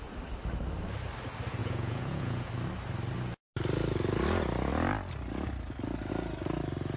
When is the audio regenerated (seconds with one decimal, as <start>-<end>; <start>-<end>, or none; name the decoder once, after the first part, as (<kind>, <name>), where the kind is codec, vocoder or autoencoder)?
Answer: 1.6-2.5 (vocoder, Vocos)